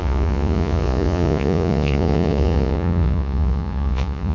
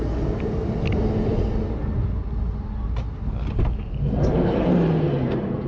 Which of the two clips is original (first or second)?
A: second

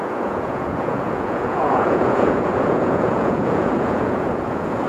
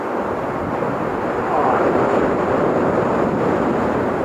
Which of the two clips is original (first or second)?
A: second